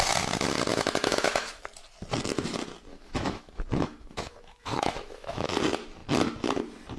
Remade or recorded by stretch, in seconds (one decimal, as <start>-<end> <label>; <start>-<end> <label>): 0.0-0.7 recorded; 0.7-1.6 remade; 1.6-2.9 recorded; 2.9-5.6 remade; 5.6-7.0 recorded